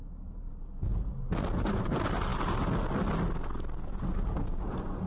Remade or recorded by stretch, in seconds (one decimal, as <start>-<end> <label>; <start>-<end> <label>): 0.0-5.1 recorded

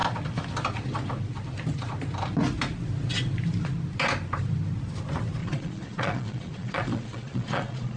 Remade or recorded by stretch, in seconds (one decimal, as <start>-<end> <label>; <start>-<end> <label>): 0.0-5.4 recorded; 5.4-8.0 remade

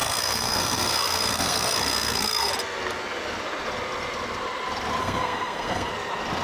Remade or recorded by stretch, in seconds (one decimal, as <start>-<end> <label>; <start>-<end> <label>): 0.0-2.5 remade; 2.5-5.0 recorded; 5.0-5.9 remade; 5.9-6.4 recorded

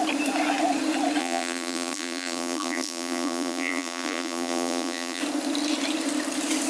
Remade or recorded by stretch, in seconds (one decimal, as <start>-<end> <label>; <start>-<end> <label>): 0.0-1.2 recorded; 1.2-5.2 remade; 5.2-6.7 recorded

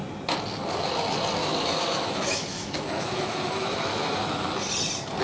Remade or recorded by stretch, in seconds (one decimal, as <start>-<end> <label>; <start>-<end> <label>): 0.0-1.4 recorded; 1.4-4.5 remade; 4.5-5.2 recorded

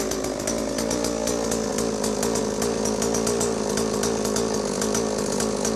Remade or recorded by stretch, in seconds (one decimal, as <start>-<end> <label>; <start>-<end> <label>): 0.0-5.8 recorded